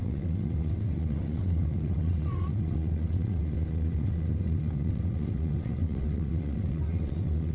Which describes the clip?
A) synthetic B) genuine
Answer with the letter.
A